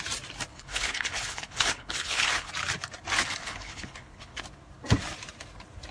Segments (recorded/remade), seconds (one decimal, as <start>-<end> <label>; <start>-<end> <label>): 0.0-0.5 recorded; 0.5-2.5 remade; 2.5-3.4 recorded; 3.4-4.4 remade; 4.4-5.9 recorded